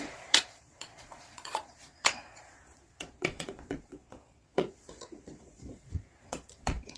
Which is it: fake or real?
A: fake